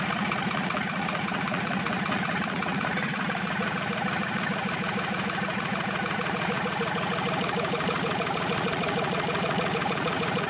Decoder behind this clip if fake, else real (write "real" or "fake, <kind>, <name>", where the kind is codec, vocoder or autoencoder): fake, vocoder, Vocos